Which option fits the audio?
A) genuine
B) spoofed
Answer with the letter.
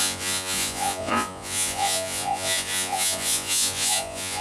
B